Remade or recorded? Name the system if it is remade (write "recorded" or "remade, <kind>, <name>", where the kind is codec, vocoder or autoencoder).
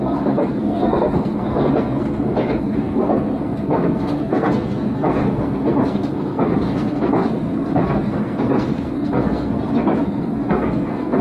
remade, codec, SNAC